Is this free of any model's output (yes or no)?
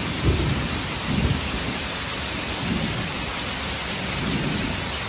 yes